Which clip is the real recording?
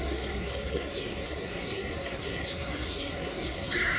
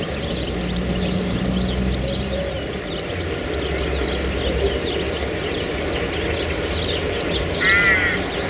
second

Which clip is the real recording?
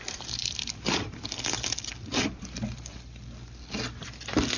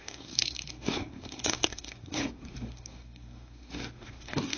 first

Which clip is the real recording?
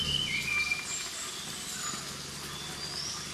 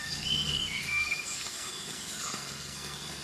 first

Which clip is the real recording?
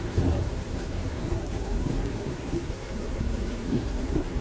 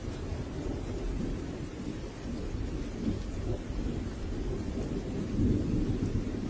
second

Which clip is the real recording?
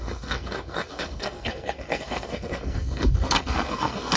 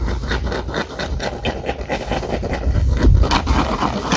second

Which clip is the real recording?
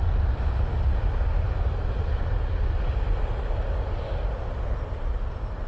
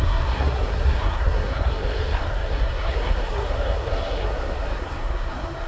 first